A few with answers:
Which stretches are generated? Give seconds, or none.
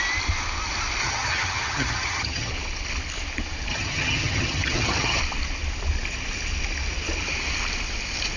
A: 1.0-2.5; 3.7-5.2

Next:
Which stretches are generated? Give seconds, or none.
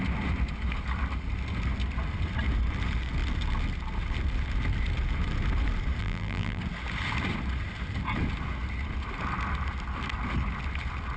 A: 6.0-6.6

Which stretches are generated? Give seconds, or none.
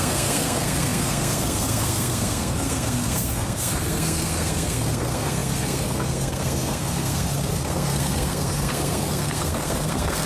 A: 0.0-10.3